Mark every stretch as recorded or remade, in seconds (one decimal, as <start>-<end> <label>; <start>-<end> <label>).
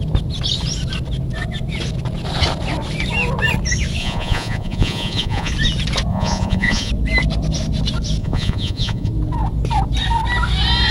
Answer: 0.0-4.0 recorded; 4.0-5.5 remade; 5.5-6.1 recorded; 6.1-6.9 remade; 6.9-8.2 recorded; 8.2-9.1 remade; 9.1-10.9 recorded